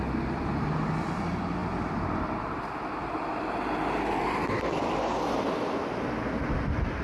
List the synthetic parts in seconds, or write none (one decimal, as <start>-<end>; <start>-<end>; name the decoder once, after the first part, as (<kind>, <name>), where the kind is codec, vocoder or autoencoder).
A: none